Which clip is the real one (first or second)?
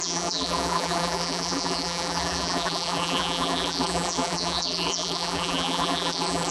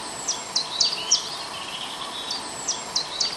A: second